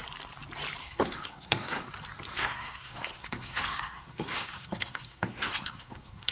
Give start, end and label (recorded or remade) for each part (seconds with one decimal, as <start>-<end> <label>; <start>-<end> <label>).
0.0-0.8 recorded; 0.8-1.9 remade; 1.9-2.3 recorded; 2.3-6.3 remade